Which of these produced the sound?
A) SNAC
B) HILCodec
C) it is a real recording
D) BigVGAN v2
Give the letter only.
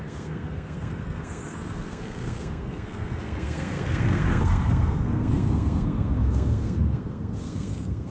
A